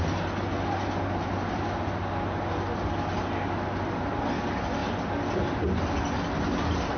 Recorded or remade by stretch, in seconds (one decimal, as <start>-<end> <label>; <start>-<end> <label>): 0.0-7.0 recorded